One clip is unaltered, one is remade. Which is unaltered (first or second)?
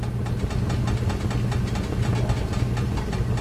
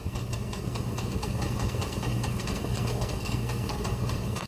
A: first